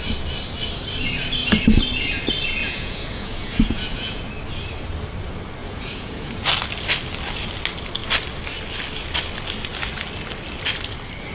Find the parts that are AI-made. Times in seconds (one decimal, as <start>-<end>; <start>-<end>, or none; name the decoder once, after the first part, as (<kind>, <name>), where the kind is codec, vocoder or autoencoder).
2.6-4.3 (vocoder, Vocos); 5.6-6.5